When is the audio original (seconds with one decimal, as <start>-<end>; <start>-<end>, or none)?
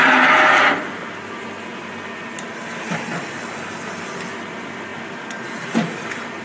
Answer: 0.0-1.7; 3.1-6.4